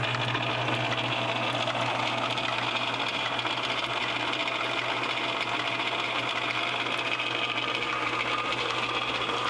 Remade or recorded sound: recorded